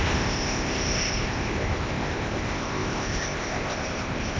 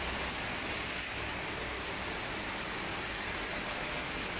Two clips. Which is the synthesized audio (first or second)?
first